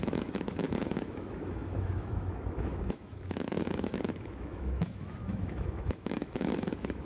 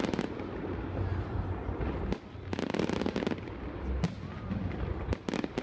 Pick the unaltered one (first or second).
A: second